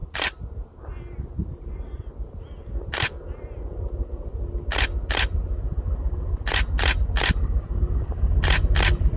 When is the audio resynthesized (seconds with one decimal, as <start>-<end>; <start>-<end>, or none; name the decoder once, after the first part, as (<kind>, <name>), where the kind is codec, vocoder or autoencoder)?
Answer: 0.0-0.8 (vocoder, BigVGAN v2); 1.4-1.9